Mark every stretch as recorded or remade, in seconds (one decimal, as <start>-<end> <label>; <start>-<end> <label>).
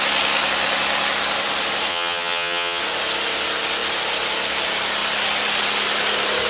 0.0-1.9 recorded; 1.9-2.8 remade; 2.8-6.5 recorded